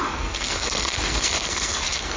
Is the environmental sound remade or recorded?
remade